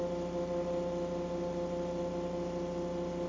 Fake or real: real